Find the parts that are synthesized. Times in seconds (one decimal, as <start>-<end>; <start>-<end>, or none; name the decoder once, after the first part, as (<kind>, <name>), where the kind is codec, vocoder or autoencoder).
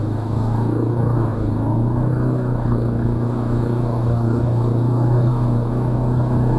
0.0-6.6 (codec, DAC)